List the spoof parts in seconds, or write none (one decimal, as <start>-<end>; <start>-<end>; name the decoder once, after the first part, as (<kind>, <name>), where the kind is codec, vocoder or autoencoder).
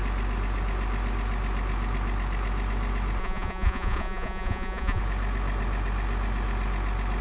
3.2-5.0 (vocoder, Vocos)